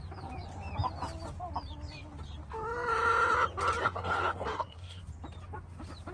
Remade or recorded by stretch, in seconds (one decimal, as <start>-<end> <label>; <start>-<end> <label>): 0.0-3.8 recorded; 3.8-5.0 remade; 5.0-6.1 recorded